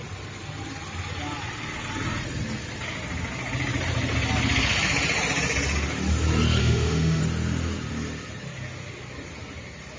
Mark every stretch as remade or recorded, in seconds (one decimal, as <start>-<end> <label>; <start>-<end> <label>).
0.0-6.6 recorded; 6.6-7.2 remade; 7.2-10.0 recorded